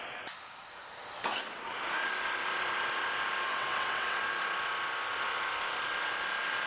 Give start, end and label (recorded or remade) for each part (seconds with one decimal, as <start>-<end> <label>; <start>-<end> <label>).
0.0-3.5 recorded; 3.5-4.2 remade; 4.2-6.7 recorded